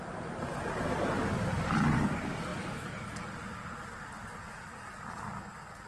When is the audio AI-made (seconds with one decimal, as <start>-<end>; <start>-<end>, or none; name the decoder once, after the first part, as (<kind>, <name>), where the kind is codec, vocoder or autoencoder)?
2.5-3.2 (codec, DAC)